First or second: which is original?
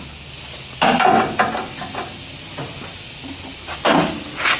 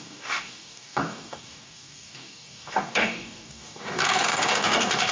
first